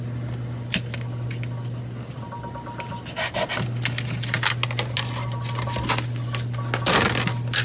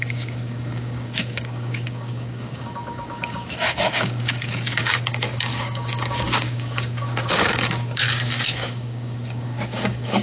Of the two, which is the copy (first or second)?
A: second